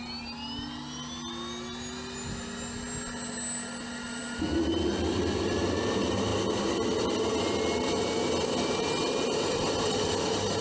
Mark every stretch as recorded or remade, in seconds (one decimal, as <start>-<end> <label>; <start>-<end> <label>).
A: 0.0-10.6 recorded